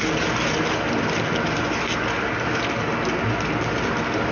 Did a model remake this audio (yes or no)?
no